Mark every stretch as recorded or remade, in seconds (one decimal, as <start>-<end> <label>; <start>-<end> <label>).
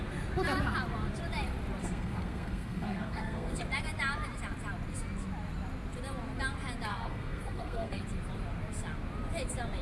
0.0-1.8 recorded; 1.8-3.6 remade; 3.6-6.9 recorded; 6.9-8.0 remade; 8.0-9.8 recorded